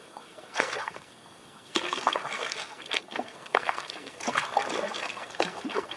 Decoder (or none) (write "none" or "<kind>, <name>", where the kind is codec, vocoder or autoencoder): codec, SNAC